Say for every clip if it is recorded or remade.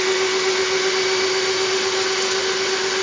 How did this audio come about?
recorded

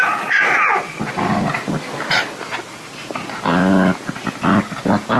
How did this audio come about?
recorded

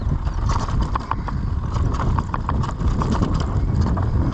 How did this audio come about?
recorded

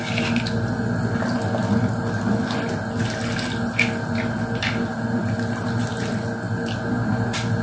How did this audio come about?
recorded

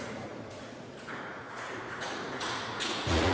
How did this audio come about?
remade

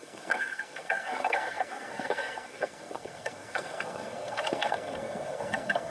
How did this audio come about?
remade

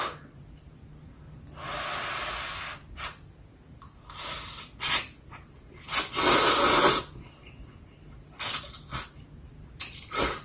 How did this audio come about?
recorded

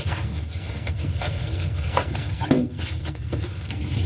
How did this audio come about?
remade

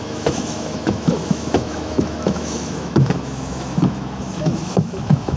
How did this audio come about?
remade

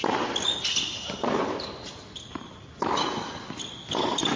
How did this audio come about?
recorded